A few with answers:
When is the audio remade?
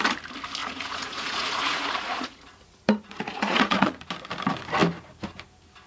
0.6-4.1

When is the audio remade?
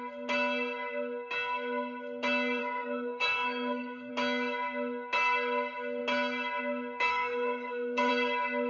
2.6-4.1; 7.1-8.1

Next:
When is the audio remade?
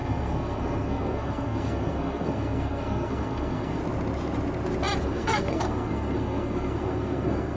0.0-3.8; 5.0-7.6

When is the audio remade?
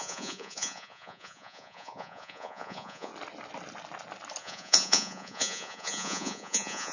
0.0-3.1; 4.4-6.9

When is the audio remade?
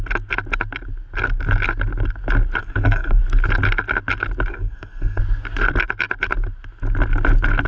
2.6-3.2; 4.5-5.2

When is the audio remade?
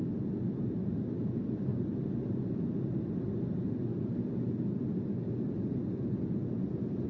none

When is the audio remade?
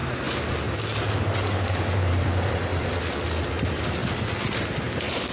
1.2-2.7; 3.5-5.3